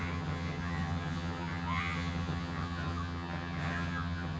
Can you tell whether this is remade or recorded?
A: remade